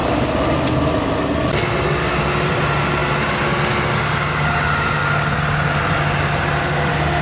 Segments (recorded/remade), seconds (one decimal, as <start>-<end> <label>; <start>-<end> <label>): 0.0-7.2 recorded